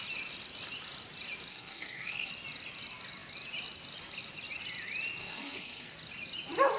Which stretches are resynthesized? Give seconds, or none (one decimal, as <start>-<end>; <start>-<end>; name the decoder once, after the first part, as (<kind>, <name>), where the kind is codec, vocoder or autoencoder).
1.5-2.3 (codec, SNAC); 5.2-5.9